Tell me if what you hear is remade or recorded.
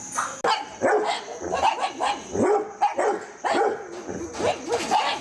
recorded